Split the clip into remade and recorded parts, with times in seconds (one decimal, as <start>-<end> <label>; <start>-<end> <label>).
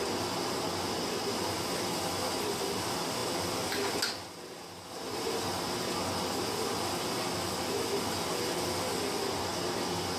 0.0-10.2 recorded